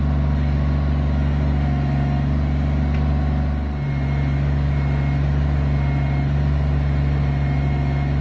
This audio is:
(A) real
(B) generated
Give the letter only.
A